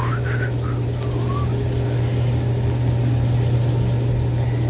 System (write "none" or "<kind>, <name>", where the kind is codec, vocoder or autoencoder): none